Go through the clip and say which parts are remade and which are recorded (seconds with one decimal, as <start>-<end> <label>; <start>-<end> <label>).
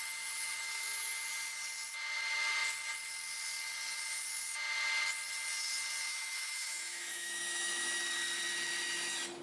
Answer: 0.0-6.1 recorded; 6.1-8.0 remade; 8.0-9.4 recorded